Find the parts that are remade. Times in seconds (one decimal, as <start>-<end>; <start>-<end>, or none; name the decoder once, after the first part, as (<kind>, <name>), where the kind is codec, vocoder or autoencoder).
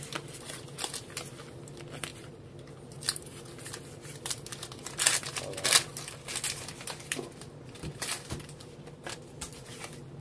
2.1-2.6 (vocoder, BigVGAN v2)